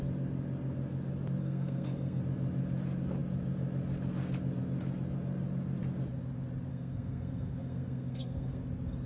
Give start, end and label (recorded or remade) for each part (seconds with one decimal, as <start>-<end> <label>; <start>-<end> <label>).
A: 0.0-1.4 recorded; 1.4-2.2 remade; 2.2-6.7 recorded; 6.7-8.6 remade; 8.6-9.1 recorded